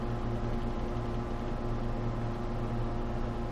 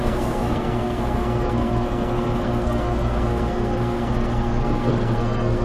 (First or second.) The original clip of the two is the first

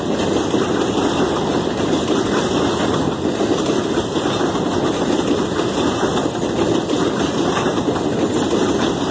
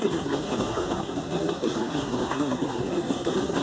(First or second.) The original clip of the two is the first